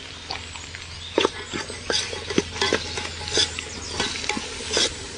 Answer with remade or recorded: recorded